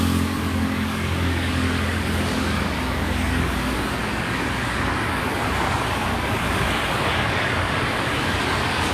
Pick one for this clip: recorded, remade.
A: remade